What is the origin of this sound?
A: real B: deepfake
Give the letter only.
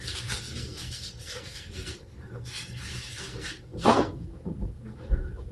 B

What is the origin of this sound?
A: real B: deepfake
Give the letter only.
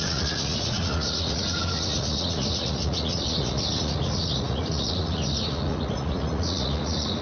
B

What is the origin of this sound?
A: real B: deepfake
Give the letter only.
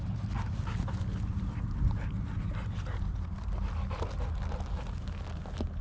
A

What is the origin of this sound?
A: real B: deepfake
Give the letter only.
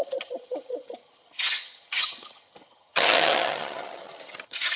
B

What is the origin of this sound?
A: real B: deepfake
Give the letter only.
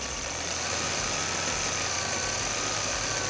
A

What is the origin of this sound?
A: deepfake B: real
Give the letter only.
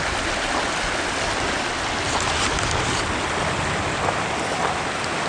B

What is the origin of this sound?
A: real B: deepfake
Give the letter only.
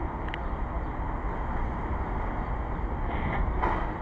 A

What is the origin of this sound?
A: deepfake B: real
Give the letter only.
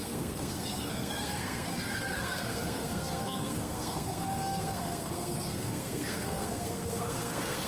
A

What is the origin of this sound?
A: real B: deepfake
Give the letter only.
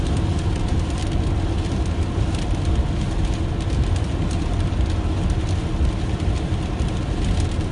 A